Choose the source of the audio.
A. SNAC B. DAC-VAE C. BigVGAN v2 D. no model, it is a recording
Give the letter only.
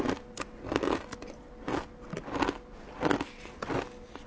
D